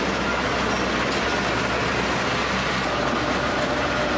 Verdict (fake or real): real